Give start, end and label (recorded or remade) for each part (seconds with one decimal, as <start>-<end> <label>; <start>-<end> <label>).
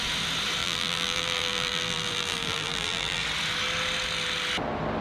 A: 0.0-0.6 recorded; 0.6-3.2 remade; 3.2-5.0 recorded